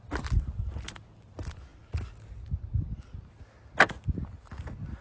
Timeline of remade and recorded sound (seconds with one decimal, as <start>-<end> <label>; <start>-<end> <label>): 0.0-5.0 recorded